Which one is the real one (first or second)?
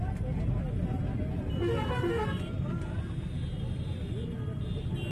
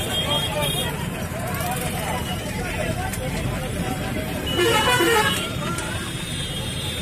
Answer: first